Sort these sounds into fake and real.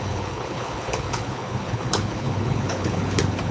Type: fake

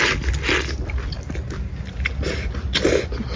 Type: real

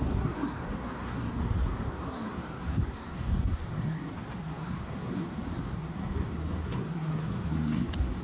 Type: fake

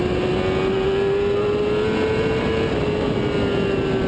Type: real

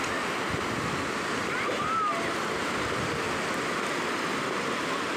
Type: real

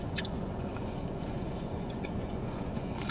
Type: fake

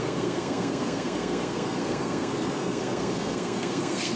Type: fake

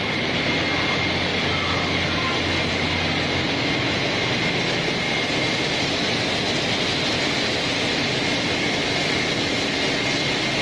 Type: real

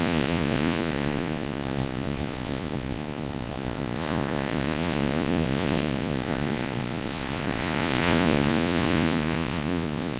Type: fake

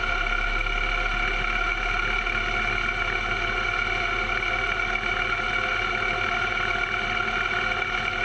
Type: real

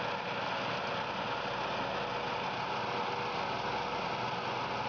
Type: real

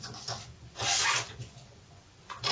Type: fake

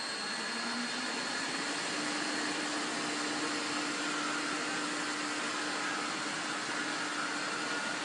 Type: real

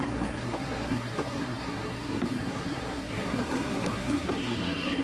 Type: fake